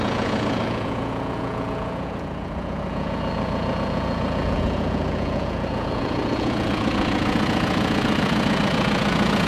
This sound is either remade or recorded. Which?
remade